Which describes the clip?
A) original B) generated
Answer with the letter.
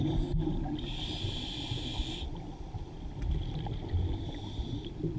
A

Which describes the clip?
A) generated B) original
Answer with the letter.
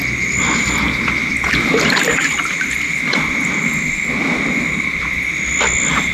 B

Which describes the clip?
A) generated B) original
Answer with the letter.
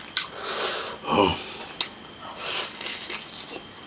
B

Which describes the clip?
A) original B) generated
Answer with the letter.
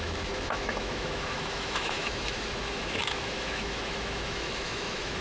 B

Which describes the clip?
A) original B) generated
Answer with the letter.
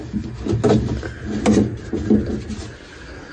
A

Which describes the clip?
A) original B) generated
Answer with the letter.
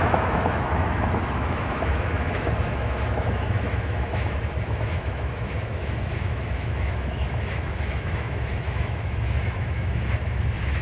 B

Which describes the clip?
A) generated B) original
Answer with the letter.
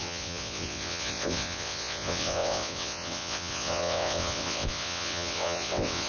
A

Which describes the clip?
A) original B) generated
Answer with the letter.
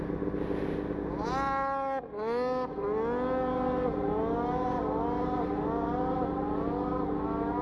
A